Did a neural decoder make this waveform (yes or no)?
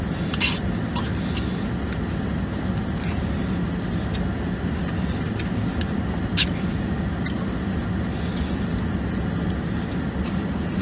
no